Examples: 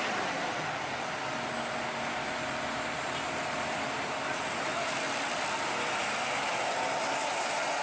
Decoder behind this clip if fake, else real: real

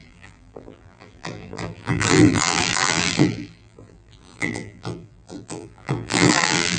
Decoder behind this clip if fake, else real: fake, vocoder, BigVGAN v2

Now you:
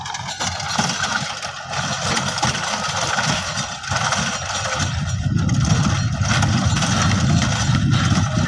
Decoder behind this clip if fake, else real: real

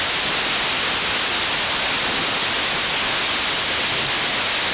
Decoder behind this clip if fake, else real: real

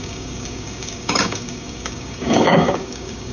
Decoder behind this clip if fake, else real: fake, codec, DAC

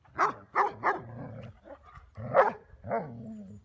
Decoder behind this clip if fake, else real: real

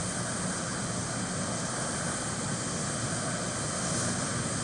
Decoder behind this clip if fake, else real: real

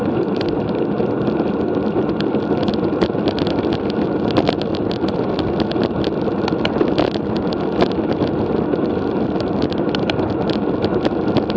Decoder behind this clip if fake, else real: real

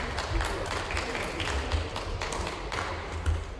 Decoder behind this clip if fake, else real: real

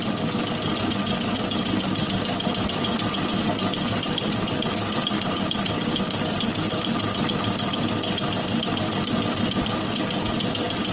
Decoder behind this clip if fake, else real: real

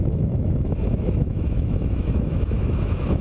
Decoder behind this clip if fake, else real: fake, autoencoder, DAC-VAE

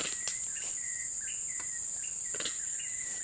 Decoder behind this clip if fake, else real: fake, vocoder, BigVGAN v2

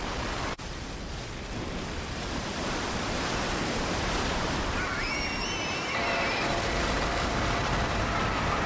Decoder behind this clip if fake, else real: fake, vocoder, BigVGAN v2